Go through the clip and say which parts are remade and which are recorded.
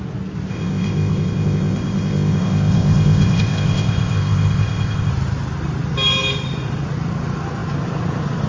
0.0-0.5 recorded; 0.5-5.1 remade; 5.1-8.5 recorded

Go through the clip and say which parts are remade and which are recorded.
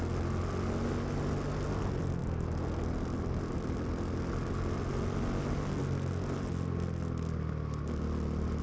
0.0-8.6 recorded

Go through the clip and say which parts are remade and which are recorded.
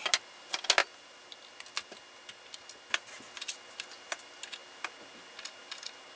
0.0-6.2 recorded